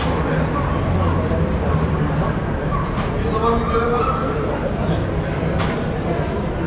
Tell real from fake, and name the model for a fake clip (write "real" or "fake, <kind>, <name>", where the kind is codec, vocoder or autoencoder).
real